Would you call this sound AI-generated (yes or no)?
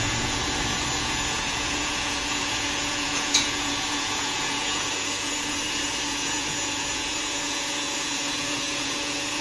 yes